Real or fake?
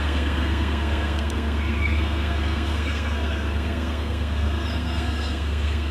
fake